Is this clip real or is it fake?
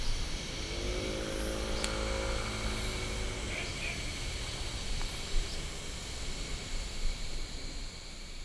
real